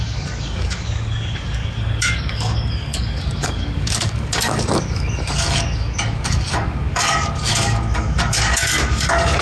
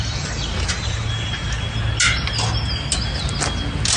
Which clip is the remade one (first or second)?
first